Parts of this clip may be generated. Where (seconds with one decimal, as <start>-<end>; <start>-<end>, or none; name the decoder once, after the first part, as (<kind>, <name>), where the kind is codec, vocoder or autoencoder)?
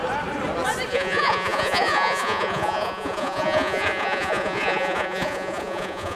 0.9-6.2 (vocoder, Vocos)